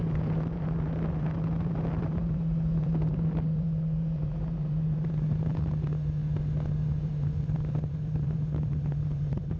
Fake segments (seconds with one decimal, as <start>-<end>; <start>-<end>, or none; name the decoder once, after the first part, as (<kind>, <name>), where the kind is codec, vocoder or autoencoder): 0.0-6.2 (vocoder, BigVGAN v2); 7.0-9.6